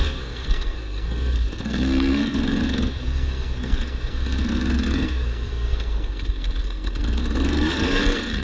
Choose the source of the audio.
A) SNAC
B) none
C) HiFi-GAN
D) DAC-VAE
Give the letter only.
A